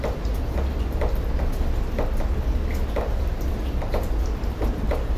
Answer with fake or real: real